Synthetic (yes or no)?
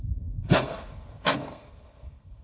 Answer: yes